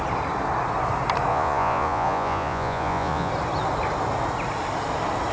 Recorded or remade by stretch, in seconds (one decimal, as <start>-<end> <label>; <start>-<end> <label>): 0.0-1.3 recorded; 1.3-3.3 remade; 3.3-5.3 recorded